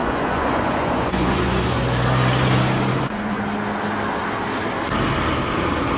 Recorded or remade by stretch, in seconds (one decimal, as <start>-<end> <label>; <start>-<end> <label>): 0.0-1.8 remade; 1.8-2.9 recorded; 2.9-3.4 remade; 3.4-6.0 recorded

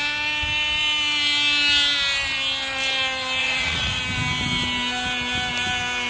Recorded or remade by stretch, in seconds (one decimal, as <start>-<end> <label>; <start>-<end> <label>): 0.0-3.4 recorded; 3.4-4.0 remade; 4.0-6.1 recorded

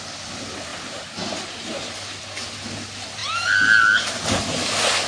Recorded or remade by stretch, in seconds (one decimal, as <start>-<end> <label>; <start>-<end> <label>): 0.0-5.1 recorded

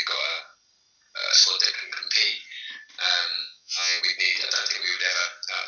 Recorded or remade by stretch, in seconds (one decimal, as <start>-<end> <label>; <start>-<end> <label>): 0.0-3.4 recorded; 3.4-4.0 remade; 4.0-5.7 recorded

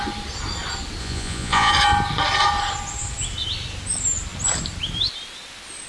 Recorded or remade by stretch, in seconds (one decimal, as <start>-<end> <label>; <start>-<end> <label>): 0.0-1.0 recorded; 1.0-1.7 remade; 1.7-5.9 recorded

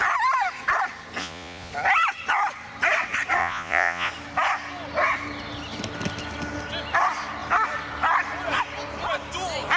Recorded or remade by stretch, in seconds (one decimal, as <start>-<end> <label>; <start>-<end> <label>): 0.0-1.2 recorded; 1.2-1.7 remade; 1.7-3.4 recorded; 3.4-4.1 remade; 4.1-9.8 recorded